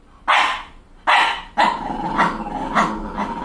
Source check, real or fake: real